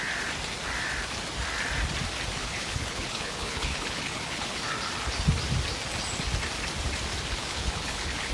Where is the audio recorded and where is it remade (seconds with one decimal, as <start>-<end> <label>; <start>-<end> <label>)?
0.0-2.4 recorded; 2.4-4.6 remade; 4.6-7.4 recorded; 7.4-8.3 remade